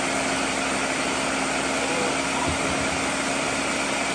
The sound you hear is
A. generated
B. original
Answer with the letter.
B